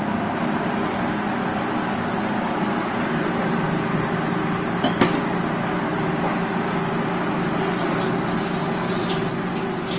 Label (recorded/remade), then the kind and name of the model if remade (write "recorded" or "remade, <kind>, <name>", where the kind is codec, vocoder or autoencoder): recorded